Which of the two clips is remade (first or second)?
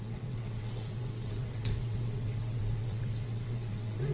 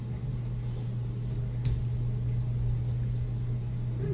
first